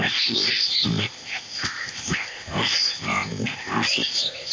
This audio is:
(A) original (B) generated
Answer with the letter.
B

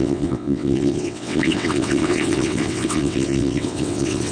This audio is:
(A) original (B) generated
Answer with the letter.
B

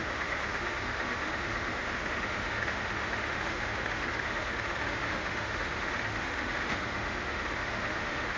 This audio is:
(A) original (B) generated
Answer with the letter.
B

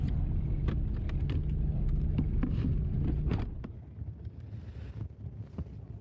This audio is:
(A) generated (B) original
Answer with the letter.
B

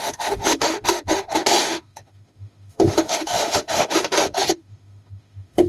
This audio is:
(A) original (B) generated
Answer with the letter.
B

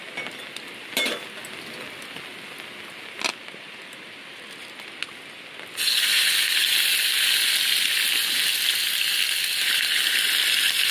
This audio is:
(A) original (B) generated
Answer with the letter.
A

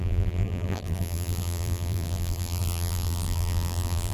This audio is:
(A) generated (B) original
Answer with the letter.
A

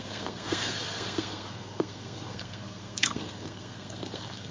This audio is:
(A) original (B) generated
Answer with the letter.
B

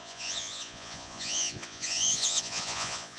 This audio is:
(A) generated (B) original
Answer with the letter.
A